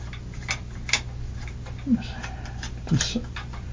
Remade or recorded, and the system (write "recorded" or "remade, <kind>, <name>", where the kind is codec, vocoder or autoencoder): recorded